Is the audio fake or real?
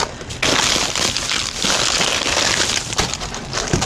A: real